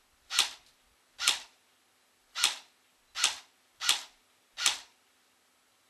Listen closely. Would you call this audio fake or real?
real